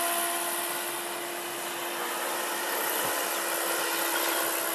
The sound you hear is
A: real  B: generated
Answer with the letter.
A